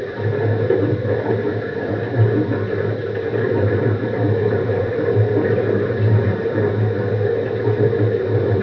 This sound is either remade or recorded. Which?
recorded